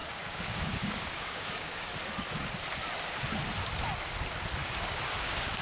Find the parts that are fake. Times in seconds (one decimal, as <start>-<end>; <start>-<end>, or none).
0.0-1.9; 4.6-5.6